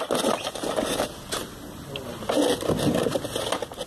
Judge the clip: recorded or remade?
recorded